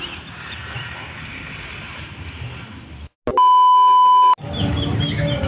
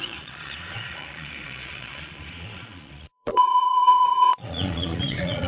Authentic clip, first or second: first